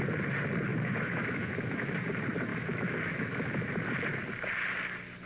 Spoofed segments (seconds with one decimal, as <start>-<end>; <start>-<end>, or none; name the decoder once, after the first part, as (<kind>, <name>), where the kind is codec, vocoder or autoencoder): 0.7-1.9 (autoencoder, DAC-VAE); 2.5-3.7